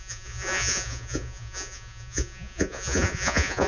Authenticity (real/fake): fake